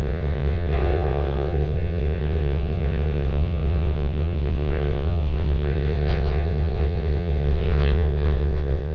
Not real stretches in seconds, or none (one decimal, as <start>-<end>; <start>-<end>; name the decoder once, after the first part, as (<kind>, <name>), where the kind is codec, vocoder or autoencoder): 0.0-8.9 (vocoder, WaveNeXt)